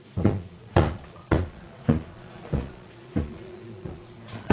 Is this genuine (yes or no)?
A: no